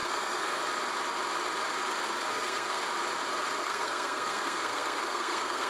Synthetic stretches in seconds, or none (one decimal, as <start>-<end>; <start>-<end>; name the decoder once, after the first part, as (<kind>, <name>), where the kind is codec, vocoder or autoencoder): 0.0-0.6 (codec, SNAC); 2.3-2.8; 3.6-5.7